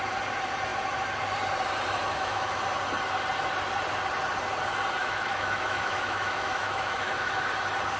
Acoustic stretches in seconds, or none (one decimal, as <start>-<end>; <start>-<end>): 0.0-2.1; 2.6-5.0; 7.4-8.0